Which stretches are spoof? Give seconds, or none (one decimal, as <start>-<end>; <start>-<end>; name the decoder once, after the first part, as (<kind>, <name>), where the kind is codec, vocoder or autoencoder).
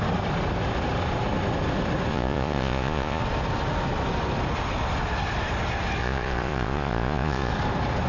2.1-3.2 (vocoder, Vocos); 6.0-7.5